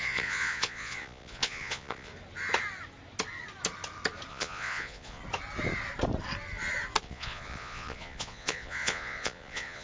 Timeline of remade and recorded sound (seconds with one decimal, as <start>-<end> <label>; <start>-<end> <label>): 0.0-2.1 remade; 2.1-4.3 recorded; 4.3-5.2 remade; 5.2-7.0 recorded; 7.0-9.8 remade